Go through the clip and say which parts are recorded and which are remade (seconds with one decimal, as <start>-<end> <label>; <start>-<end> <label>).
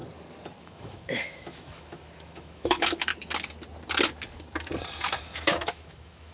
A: 0.0-0.6 recorded; 0.6-3.1 remade; 3.1-5.2 recorded; 5.2-6.3 remade